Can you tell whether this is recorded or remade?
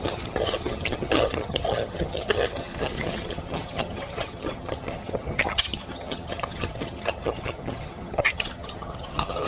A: remade